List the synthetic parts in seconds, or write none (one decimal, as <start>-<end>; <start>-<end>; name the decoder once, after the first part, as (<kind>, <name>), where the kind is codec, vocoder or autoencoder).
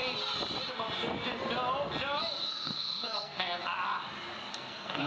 2.4-3.6 (codec, SNAC); 4.5-5.1